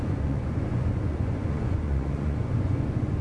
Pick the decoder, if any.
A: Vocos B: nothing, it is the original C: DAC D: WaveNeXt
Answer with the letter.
A